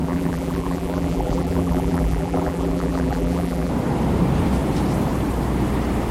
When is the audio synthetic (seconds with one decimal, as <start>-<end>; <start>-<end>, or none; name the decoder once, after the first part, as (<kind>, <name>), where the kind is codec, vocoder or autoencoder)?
0.0-3.7 (vocoder, BigVGAN v2)